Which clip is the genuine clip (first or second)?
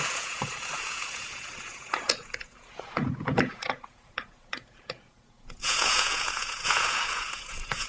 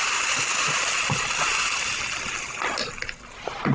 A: second